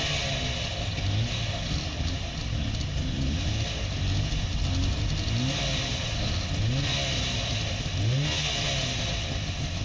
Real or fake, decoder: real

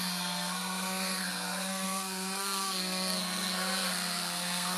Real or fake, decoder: fake, codec, SNAC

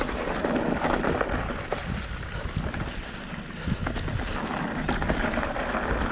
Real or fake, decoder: real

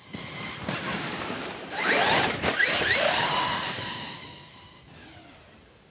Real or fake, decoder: fake, vocoder, BigVGAN v2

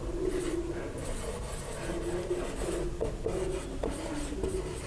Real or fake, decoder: real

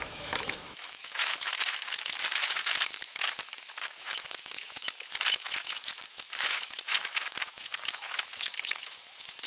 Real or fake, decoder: fake, autoencoder, DAC-VAE